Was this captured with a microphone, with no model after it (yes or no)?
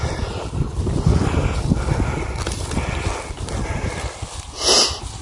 yes